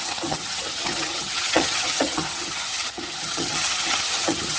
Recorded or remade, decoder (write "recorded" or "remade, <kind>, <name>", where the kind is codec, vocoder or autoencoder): remade, vocoder, HiFi-GAN